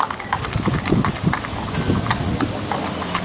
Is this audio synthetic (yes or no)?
no